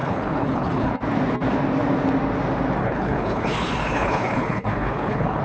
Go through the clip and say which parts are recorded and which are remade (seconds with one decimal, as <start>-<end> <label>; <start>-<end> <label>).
0.0-0.9 remade; 0.9-2.8 recorded; 2.8-5.4 remade